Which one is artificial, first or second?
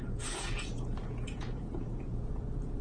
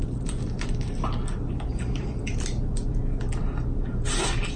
first